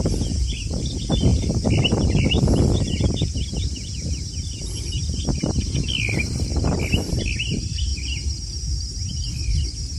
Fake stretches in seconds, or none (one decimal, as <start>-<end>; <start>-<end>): 0.0-6.5; 7.1-7.9; 8.7-10.0